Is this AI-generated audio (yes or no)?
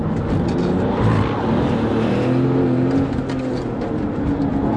no